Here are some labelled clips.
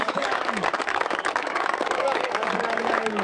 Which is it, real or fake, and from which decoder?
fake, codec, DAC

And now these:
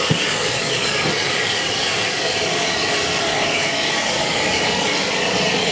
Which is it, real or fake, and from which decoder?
fake, codec, DAC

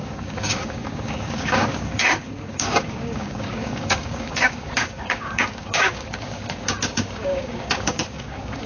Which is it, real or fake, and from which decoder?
fake, codec, DAC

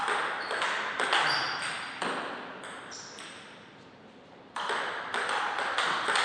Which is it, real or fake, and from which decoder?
real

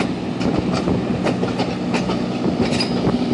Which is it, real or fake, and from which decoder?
real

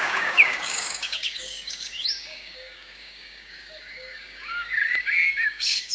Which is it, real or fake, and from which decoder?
fake, codec, DAC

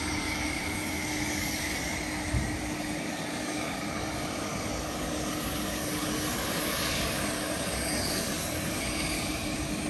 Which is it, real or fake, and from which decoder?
fake, codec, DAC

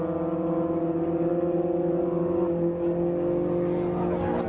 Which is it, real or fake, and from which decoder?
real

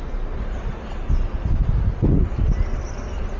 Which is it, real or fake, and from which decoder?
real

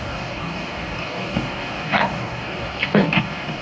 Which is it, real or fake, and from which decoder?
fake, codec, DAC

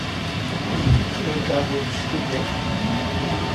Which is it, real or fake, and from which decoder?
real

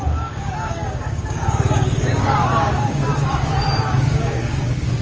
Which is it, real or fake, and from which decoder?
fake, codec, DAC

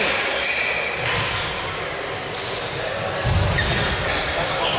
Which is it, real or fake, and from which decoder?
real